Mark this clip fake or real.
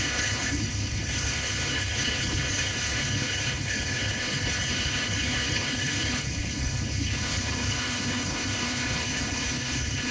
fake